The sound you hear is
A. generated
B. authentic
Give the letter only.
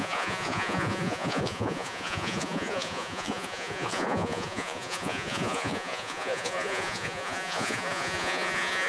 A